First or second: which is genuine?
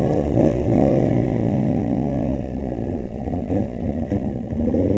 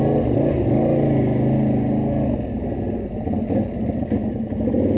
second